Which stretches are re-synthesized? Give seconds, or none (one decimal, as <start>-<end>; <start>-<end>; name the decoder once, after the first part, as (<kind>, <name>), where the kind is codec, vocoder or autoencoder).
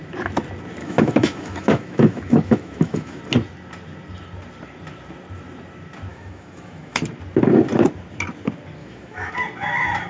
0.8-3.2 (autoencoder, DAC-VAE); 6.1-7.0; 8.8-9.3